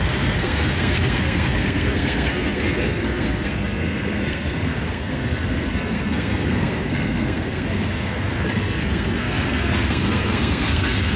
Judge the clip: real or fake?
fake